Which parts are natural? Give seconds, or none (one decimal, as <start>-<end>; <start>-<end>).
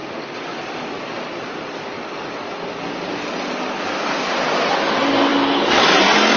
0.0-6.4